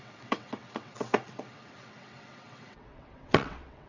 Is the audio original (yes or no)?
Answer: no